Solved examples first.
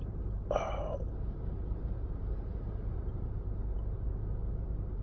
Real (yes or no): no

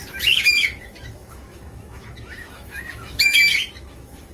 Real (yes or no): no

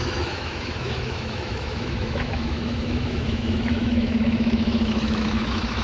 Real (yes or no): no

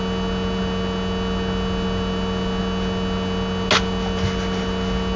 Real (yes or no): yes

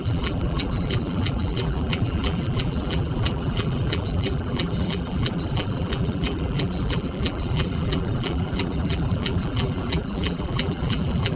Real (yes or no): no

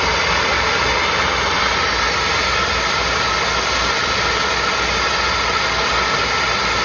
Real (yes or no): yes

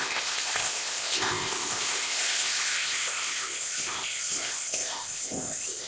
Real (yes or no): no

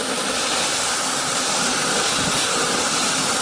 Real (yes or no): yes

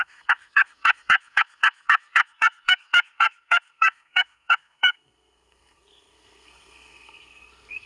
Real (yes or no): no